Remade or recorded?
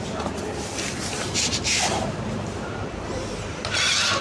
remade